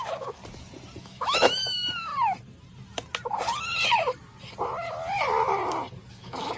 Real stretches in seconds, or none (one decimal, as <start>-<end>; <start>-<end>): 0.4-1.0; 2.1-6.1